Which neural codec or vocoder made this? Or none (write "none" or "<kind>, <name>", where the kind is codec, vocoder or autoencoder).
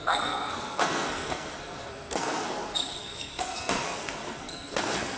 codec, SNAC